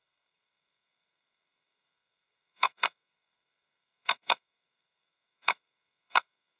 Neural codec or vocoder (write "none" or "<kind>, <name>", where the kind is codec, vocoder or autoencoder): codec, SNAC